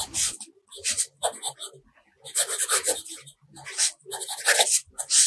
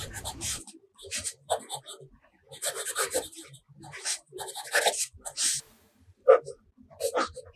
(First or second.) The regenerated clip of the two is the second